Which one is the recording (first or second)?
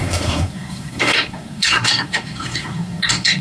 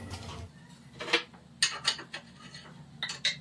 second